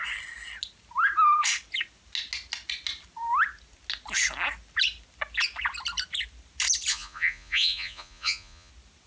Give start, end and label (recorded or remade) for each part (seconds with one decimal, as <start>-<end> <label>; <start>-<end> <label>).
0.0-6.9 recorded; 6.9-8.7 remade; 8.7-9.1 recorded

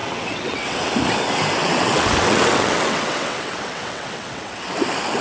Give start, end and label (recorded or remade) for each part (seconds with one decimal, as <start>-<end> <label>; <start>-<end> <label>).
0.0-0.9 remade; 0.9-1.6 recorded; 1.6-4.7 remade; 4.7-5.2 recorded

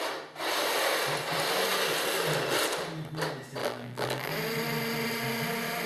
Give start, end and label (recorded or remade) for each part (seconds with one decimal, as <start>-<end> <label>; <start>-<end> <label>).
0.0-3.6 recorded; 3.6-4.3 remade; 4.3-5.9 recorded

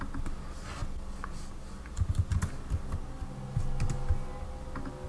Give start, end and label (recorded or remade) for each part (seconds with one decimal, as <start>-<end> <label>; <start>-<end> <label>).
0.0-5.1 recorded

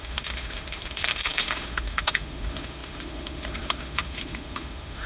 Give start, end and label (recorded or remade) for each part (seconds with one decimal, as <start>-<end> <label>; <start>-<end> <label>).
0.0-5.1 remade

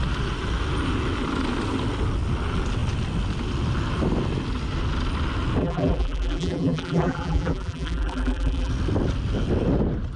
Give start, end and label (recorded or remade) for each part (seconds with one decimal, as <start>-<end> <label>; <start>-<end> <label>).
0.0-5.6 recorded; 5.6-8.7 remade; 8.7-10.2 recorded